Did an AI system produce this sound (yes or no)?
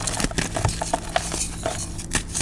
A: no